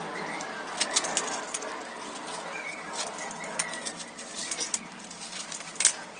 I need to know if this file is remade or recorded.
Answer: recorded